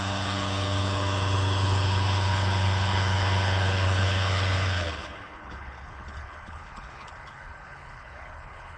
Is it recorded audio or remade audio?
remade